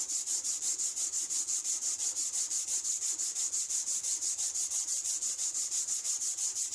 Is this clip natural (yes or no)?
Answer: no